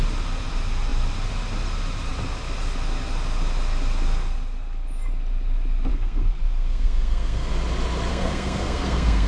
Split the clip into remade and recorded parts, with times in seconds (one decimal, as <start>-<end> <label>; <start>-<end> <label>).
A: 0.0-5.9 recorded; 5.9-7.5 remade; 7.5-8.1 recorded; 8.1-9.3 remade